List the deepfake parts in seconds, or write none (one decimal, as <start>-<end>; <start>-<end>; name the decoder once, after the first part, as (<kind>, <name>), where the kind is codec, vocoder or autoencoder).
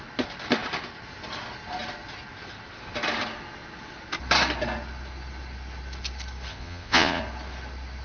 6.5-7.2 (vocoder, Vocos)